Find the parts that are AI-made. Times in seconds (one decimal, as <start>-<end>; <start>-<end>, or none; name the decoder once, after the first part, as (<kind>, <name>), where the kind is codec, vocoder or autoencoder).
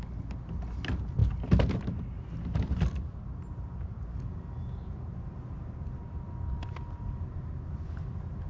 none